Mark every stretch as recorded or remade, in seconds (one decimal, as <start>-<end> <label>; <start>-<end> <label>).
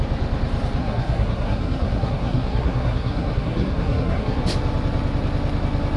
0.0-0.8 recorded; 0.8-4.4 remade; 4.4-6.0 recorded